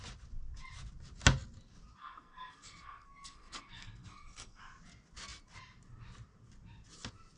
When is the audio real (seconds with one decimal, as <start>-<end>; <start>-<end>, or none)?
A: 0.0-2.0; 4.6-7.4